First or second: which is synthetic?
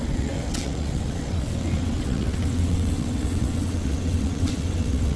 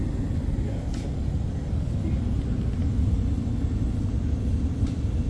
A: first